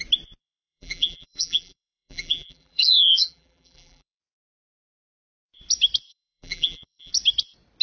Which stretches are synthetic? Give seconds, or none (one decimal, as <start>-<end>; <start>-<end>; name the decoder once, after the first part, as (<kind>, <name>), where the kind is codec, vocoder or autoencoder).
0.4-4.2 (vocoder, BigVGAN v2); 6.1-7.1